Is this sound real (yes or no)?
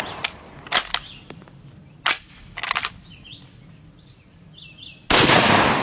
yes